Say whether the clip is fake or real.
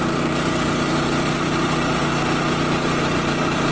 fake